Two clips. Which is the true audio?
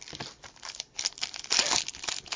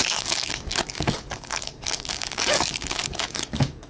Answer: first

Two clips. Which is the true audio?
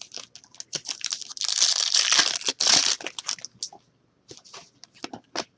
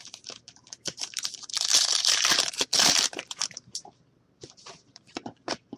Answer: first